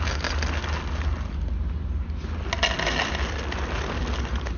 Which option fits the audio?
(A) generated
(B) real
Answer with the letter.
B